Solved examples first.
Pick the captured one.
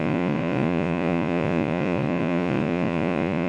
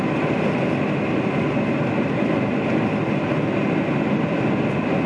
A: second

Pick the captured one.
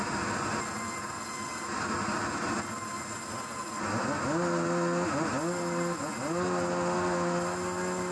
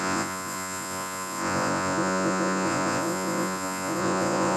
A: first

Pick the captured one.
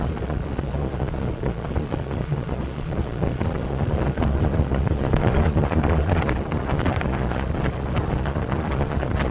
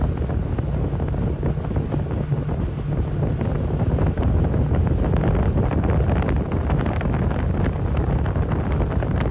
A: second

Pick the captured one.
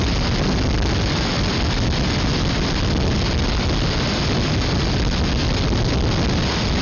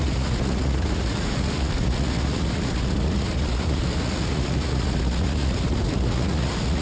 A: first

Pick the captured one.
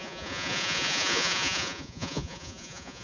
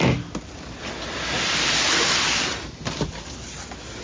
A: second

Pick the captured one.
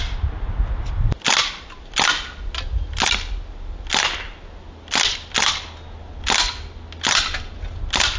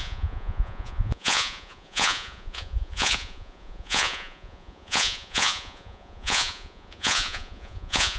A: first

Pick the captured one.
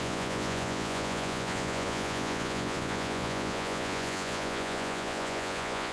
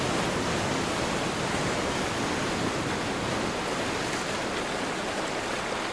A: second